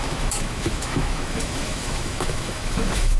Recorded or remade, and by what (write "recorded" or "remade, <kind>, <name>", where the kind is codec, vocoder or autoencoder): remade, autoencoder, DAC-VAE